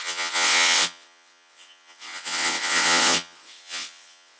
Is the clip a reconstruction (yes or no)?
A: yes